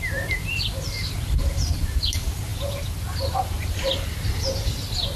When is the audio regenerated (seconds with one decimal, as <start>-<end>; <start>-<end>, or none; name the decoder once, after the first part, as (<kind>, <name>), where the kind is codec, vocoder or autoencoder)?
0.0-2.5 (vocoder, BigVGAN v2)